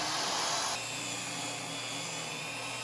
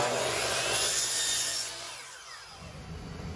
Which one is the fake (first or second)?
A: second